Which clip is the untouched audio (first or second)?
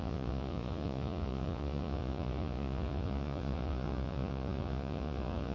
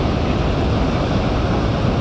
second